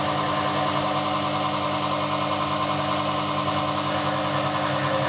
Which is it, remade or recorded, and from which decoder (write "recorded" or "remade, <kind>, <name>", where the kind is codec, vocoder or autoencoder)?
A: recorded